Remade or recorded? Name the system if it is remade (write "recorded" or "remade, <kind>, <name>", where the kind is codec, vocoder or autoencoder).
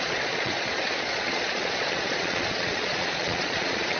remade, vocoder, Vocos